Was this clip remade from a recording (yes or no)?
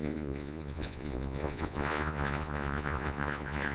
yes